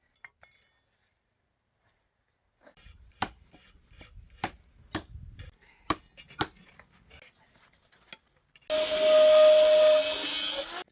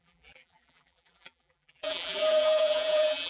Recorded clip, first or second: first